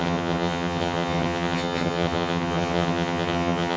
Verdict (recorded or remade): remade